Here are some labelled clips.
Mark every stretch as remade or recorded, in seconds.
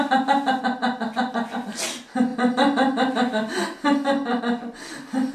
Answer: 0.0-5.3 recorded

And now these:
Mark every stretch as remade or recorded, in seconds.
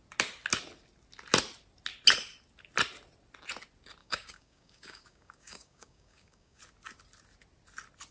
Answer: 0.0-4.0 recorded; 4.0-6.6 remade; 6.6-8.1 recorded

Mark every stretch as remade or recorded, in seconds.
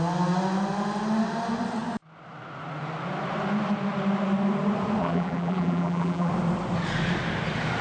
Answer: 0.0-5.0 recorded; 5.0-6.3 remade; 6.3-7.8 recorded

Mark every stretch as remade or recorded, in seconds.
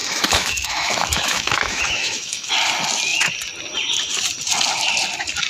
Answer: 0.0-2.5 remade; 2.5-5.5 recorded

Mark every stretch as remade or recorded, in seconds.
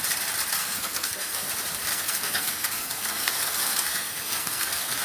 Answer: 0.0-0.6 recorded; 0.6-1.5 remade; 1.5-1.9 recorded; 1.9-5.0 remade